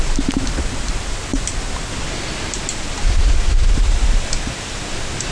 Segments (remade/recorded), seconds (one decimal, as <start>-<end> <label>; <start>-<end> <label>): 0.0-5.3 recorded